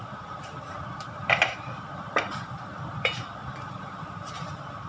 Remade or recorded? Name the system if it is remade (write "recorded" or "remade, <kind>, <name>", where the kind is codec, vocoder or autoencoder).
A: remade, vocoder, BigVGAN v2